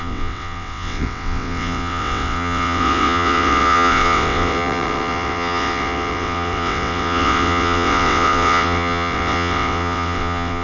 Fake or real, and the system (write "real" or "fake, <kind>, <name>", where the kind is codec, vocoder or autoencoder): fake, vocoder, WaveNeXt